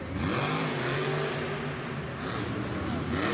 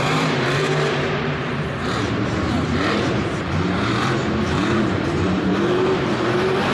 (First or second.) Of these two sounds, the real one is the first